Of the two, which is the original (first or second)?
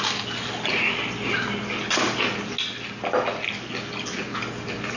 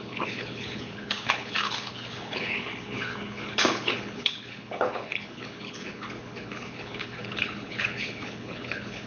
first